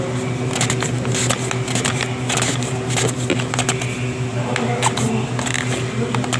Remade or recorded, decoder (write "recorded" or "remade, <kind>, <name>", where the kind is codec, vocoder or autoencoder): recorded